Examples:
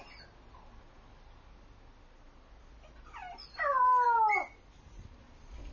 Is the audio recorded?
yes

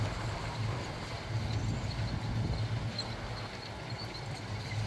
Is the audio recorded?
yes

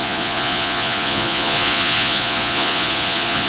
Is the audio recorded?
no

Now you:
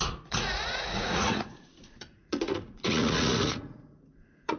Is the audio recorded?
no